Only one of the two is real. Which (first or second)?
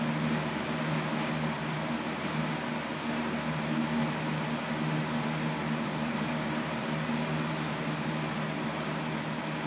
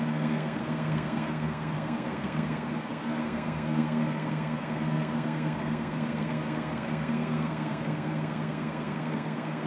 first